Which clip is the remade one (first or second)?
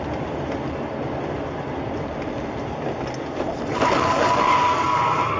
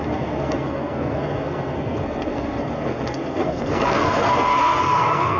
second